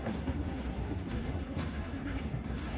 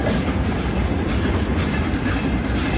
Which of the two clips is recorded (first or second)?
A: second